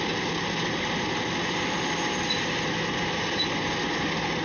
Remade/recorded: recorded